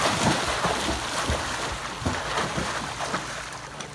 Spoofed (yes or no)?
no